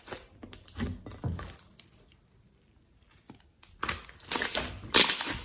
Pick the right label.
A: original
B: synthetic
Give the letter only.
A